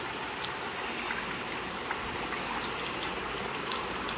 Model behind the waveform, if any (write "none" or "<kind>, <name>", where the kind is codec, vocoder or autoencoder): none